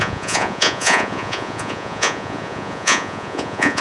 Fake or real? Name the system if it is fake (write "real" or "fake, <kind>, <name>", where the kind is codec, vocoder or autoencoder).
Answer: fake, vocoder, Vocos